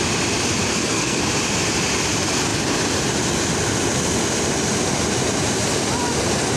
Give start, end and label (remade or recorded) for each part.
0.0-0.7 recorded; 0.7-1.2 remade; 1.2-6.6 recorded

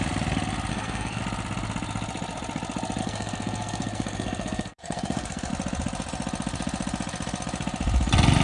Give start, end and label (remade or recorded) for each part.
0.0-0.7 recorded; 0.7-1.2 remade; 1.2-3.0 recorded; 3.0-5.5 remade; 5.5-8.4 recorded

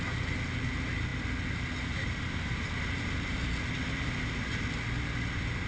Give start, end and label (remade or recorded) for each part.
0.0-5.7 recorded

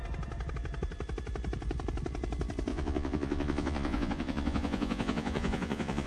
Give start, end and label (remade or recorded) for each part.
0.0-2.7 recorded; 2.7-6.1 remade

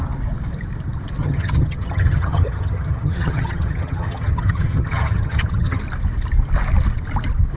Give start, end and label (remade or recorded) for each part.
0.0-1.2 recorded; 1.2-5.8 remade; 5.8-7.6 recorded